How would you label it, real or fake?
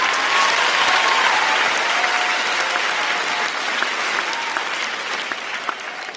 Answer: real